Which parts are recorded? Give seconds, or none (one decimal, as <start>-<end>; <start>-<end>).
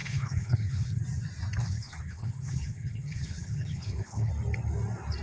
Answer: 1.0-1.6; 4.3-5.2